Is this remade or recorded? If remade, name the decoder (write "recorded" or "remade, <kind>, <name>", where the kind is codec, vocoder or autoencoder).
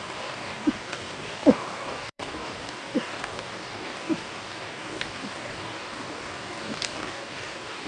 remade, codec, DAC